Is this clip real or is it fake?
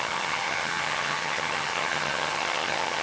fake